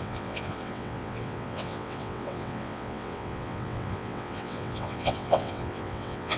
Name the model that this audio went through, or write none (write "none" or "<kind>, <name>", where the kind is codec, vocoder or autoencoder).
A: vocoder, WaveNeXt